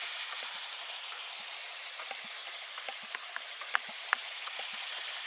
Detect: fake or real real